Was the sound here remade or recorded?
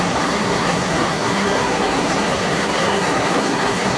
remade